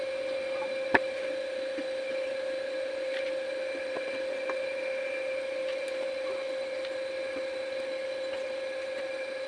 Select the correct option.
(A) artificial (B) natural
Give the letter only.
B